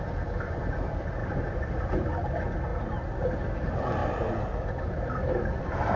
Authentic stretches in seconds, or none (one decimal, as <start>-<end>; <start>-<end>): 0.0-1.2; 1.8-4.0; 5.6-6.0